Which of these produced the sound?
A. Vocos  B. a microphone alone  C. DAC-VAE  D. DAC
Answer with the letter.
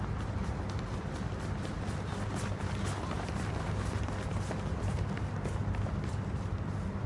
B